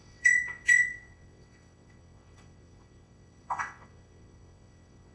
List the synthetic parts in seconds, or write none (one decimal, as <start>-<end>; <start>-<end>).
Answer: 0.0-5.1